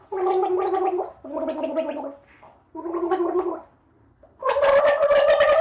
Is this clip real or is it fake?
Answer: real